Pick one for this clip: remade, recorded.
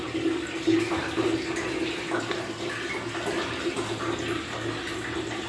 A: recorded